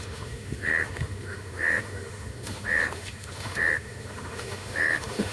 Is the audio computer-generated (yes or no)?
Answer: yes